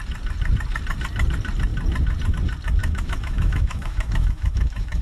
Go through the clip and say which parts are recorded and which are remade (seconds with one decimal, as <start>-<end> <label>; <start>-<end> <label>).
0.0-2.8 recorded; 2.8-5.0 remade